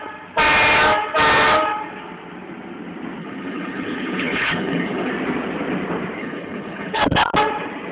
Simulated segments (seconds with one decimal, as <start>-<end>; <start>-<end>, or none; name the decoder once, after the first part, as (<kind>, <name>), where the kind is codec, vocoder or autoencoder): 3.2-5.1 (codec, HILCodec); 6.2-7.0